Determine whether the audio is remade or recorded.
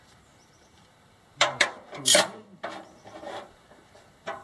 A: remade